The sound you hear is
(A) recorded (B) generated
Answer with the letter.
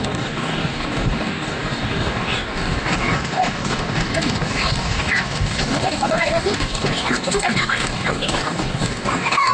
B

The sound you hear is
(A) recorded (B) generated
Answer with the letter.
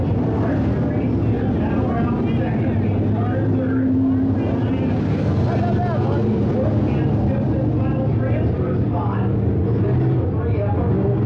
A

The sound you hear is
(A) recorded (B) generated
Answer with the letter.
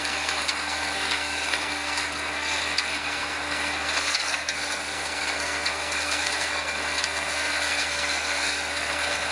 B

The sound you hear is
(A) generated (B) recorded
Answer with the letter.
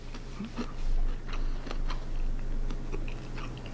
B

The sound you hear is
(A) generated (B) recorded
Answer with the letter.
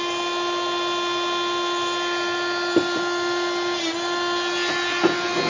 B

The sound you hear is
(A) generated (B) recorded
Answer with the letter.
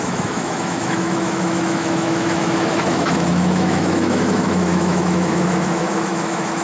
A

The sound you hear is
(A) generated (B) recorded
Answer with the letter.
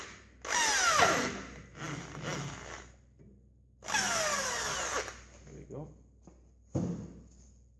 B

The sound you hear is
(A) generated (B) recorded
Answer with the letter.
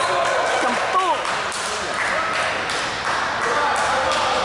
B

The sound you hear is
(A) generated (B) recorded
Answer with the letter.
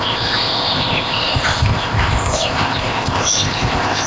A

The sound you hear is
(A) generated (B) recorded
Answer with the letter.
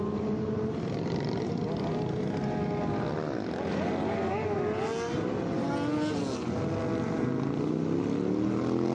B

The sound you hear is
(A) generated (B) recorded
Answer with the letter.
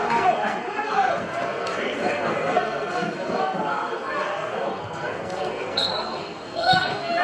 A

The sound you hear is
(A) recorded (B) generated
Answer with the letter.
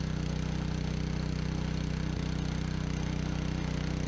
A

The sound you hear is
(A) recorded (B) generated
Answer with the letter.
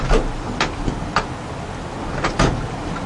A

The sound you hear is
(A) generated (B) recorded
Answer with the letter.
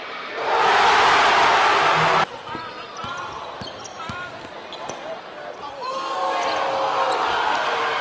B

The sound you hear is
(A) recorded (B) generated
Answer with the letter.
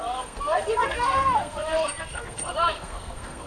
B